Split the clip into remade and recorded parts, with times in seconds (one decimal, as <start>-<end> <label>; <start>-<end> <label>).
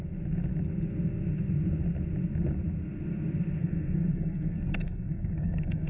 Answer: 0.0-3.6 recorded; 3.6-5.9 remade